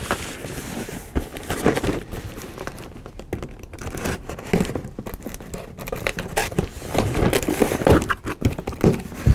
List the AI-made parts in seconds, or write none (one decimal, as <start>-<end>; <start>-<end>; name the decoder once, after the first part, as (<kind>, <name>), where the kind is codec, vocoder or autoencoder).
0.9-1.6 (vocoder, BigVGAN v2); 6.4-7.6